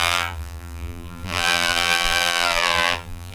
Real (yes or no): no